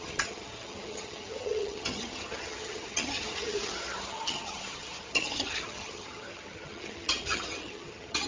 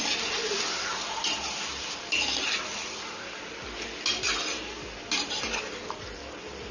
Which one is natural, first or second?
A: second